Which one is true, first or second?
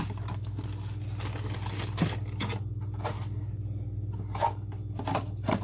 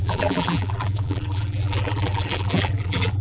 first